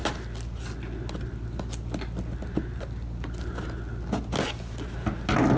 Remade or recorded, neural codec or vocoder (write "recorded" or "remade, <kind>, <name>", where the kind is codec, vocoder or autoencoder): recorded